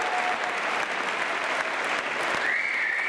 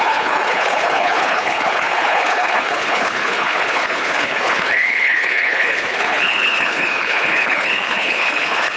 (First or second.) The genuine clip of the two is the first